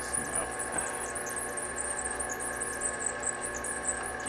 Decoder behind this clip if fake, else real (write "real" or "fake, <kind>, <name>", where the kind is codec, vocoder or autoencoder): real